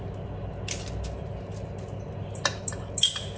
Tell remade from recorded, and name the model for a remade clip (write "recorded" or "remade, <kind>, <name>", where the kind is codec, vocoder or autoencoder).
recorded